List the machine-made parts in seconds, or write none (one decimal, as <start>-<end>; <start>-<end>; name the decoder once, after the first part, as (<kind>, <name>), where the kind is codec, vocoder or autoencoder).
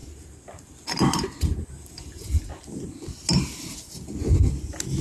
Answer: none